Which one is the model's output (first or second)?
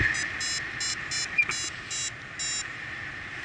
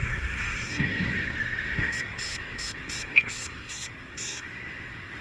second